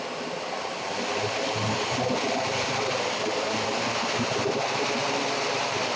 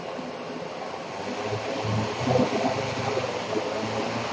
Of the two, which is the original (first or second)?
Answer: second